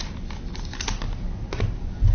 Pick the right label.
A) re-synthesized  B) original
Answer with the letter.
B